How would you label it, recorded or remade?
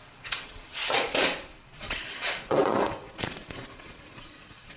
remade